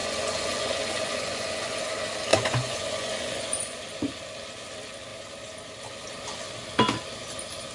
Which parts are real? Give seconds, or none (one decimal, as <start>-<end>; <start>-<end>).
1.8-2.3; 3.8-7.7